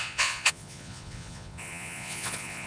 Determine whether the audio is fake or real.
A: fake